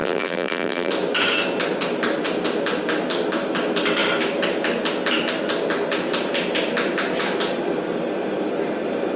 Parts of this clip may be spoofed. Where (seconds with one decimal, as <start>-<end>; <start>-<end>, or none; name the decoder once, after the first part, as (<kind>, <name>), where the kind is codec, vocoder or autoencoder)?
0.0-0.9 (vocoder, BigVGAN v2)